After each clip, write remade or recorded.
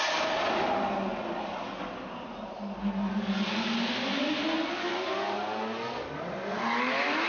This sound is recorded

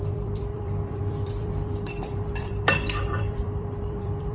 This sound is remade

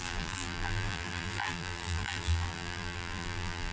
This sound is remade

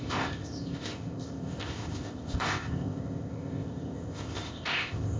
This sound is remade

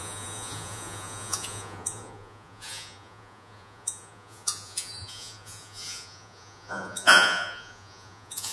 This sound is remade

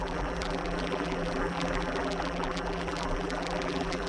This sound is remade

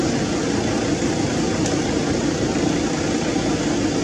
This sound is recorded